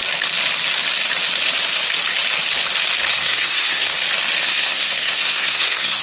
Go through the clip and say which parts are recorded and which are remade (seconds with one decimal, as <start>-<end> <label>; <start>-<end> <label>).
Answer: 0.0-3.1 recorded; 3.1-3.9 remade; 3.9-4.4 recorded; 4.4-6.0 remade